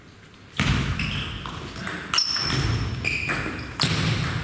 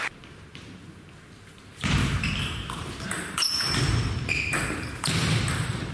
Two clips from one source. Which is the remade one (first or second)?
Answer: second